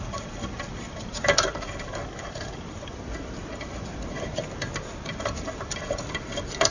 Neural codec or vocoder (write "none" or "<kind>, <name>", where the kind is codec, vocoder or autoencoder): vocoder, BigVGAN v2